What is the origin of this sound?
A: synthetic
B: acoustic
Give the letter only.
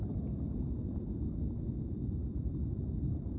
B